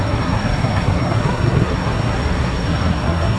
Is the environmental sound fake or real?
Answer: fake